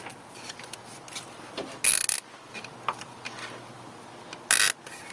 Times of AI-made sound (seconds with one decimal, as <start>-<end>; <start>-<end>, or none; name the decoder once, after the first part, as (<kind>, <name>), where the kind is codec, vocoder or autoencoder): none